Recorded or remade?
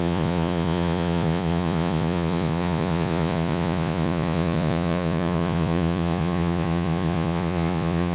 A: remade